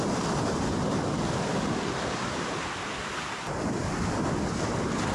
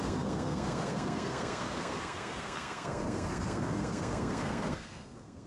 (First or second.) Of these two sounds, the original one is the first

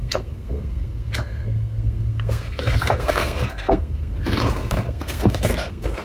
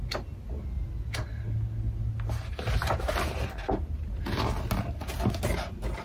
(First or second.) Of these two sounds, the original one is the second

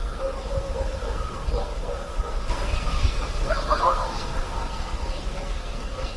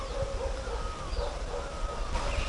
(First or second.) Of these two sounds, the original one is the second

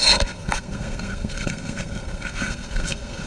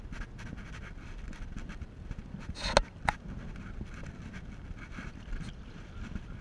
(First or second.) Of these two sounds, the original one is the second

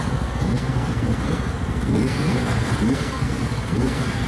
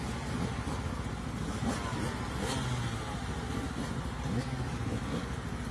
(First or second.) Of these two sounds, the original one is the second